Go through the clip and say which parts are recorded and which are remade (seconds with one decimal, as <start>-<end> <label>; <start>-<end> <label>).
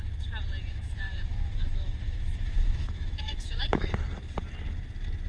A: 0.0-0.7 recorded; 0.7-3.9 remade; 3.9-5.3 recorded